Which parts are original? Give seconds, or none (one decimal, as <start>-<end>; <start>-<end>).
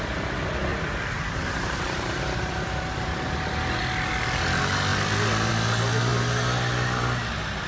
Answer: 0.0-0.7; 3.8-4.9; 5.5-7.7